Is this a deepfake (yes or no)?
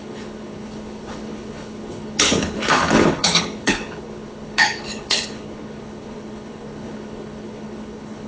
yes